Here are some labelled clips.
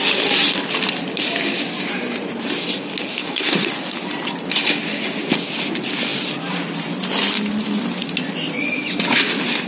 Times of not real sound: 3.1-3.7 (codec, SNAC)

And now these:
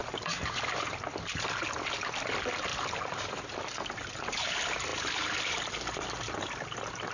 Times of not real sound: none

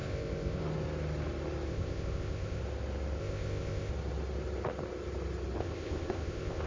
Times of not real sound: 0.0-0.6 (codec, ZipCodec); 1.7-2.6; 3.2-3.9; 5.6-6.7

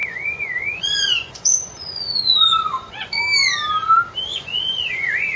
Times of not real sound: 0.0-3.2 (vocoder, Vocos); 4.3-5.4

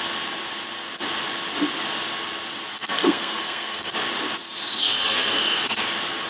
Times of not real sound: 2.7-3.9 (codec, SNAC); 4.7-5.8

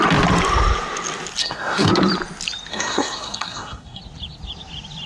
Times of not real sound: 1.4-1.9 (codec, SNAC); 2.7-4.0

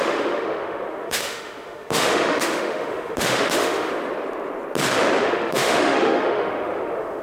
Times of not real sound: 0.0-3.9 (autoencoder, DAC-VAE); 5.2-7.2

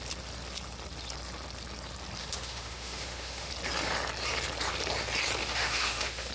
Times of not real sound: 2.2-3.5 (autoencoder, DAC-VAE); 5.4-6.3